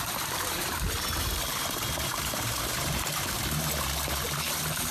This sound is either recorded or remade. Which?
remade